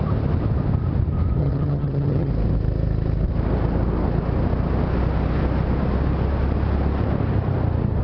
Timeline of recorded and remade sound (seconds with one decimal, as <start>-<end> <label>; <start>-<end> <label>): 0.0-1.4 recorded; 1.4-2.3 remade; 2.3-8.0 recorded